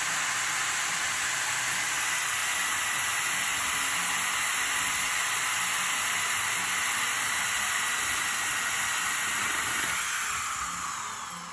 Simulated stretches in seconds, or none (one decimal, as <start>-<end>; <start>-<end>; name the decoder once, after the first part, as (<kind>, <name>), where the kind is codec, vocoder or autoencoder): none